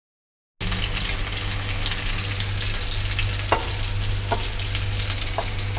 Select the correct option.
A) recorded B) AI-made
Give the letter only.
A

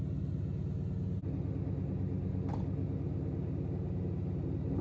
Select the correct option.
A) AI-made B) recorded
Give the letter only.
B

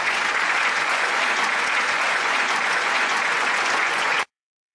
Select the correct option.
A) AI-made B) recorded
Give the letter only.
A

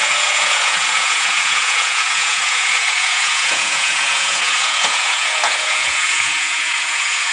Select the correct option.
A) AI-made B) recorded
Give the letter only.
A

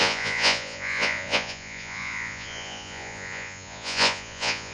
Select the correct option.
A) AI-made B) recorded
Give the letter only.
A